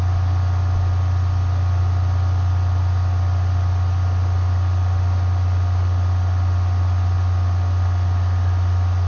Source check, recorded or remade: recorded